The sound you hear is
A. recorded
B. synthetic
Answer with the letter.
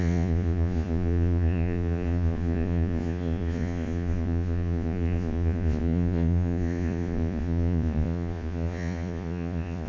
B